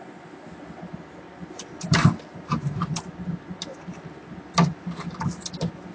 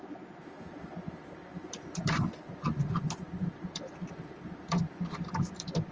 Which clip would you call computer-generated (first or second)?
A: second